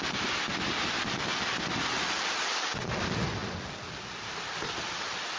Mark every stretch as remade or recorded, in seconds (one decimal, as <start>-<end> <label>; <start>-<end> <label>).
0.0-5.4 recorded